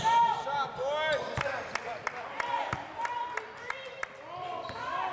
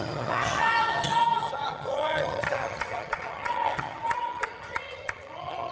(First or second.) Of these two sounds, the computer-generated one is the second